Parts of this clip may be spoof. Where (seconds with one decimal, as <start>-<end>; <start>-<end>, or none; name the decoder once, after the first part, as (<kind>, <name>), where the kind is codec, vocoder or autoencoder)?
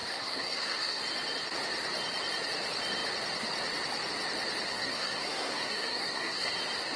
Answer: 0.0-1.0 (codec, SNAC); 4.7-6.6